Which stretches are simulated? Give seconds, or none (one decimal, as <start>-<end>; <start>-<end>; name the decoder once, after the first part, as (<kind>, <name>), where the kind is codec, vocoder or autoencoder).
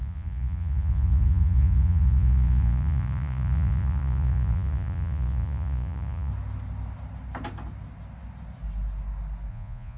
0.0-6.3 (vocoder, Vocos); 9.5-10.0